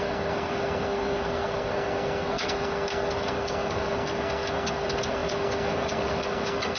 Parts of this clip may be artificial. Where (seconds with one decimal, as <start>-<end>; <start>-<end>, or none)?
0.0-6.8